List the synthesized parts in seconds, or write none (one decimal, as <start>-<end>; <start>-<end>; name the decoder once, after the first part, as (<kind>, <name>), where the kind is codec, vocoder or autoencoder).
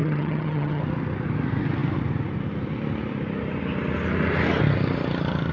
0.0-0.8 (vocoder, HiFi-GAN)